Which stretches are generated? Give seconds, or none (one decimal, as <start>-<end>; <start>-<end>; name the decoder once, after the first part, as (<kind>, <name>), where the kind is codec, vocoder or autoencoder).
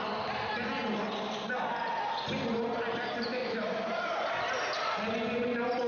3.4-4.3 (vocoder, BigVGAN v2)